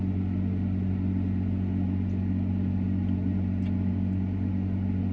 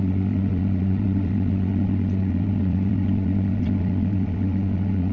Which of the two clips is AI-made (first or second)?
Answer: second